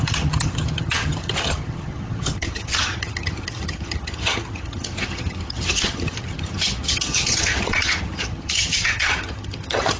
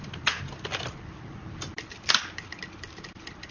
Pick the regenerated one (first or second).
first